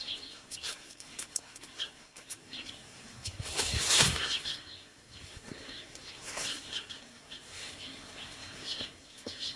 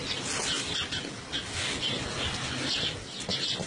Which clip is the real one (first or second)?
second